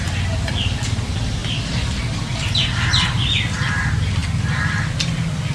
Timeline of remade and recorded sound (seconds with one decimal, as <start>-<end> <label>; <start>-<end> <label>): 0.0-1.4 remade; 1.4-2.4 recorded; 2.4-4.2 remade; 4.2-5.5 recorded